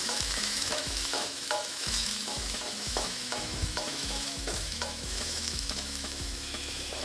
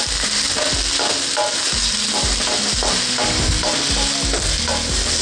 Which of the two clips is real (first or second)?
second